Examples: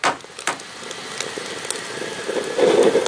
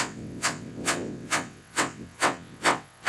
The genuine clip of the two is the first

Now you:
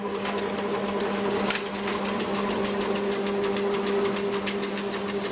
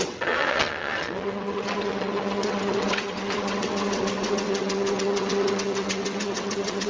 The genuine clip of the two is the first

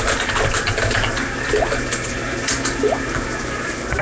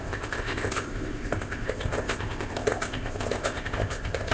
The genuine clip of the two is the first